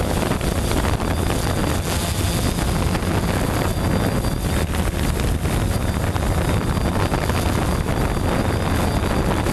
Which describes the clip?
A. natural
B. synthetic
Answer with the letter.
A